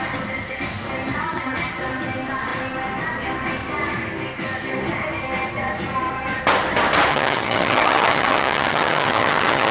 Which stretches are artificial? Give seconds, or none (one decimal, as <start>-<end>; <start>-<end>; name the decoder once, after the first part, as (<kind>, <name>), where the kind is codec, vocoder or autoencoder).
1.2-1.8 (vocoder, HiFi-GAN); 7.1-9.7